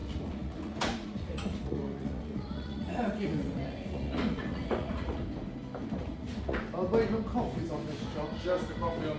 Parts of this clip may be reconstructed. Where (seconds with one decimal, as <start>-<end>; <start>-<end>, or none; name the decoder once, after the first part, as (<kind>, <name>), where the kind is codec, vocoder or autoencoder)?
0.0-5.2 (vocoder, Vocos); 6.0-6.6